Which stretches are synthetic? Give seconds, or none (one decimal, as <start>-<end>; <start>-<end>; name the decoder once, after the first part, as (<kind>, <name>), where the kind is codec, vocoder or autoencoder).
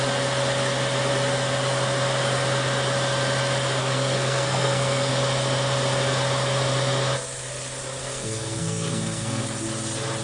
3.8-5.1 (codec, SNAC); 8.0-9.4